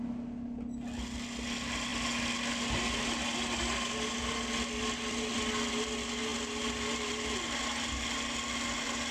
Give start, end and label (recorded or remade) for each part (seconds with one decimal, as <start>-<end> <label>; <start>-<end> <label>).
0.0-9.1 recorded